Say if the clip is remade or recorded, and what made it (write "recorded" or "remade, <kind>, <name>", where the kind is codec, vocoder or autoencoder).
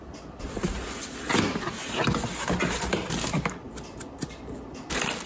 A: recorded